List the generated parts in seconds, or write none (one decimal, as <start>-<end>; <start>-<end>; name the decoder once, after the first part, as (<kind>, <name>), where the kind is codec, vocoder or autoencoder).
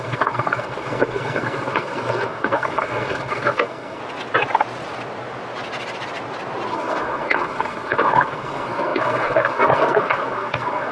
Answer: 0.0-4.0 (codec, SNAC); 6.7-10.9